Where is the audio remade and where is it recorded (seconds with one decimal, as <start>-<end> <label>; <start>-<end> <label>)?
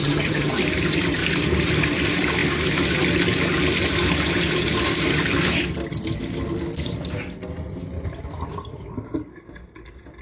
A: 0.0-0.6 remade; 0.6-10.2 recorded